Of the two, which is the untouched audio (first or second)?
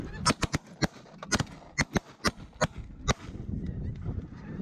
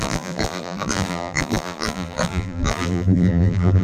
first